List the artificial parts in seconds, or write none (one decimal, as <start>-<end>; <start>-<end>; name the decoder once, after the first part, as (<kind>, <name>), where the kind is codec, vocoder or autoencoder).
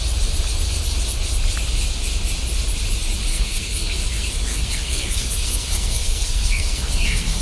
3.3-7.4 (codec, SNAC)